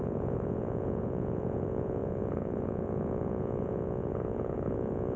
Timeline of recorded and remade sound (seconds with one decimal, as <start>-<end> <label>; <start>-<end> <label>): 0.0-5.2 remade